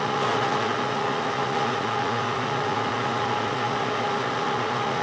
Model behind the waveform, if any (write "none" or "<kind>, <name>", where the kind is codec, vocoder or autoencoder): vocoder, Vocos